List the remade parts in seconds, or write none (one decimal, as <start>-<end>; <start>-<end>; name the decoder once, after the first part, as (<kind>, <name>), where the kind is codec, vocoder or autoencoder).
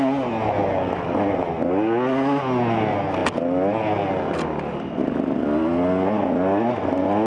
none